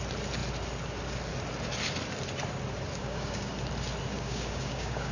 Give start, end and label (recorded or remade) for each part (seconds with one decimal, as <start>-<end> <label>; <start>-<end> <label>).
0.0-3.0 recorded; 3.0-3.5 remade; 3.5-4.1 recorded; 4.1-5.1 remade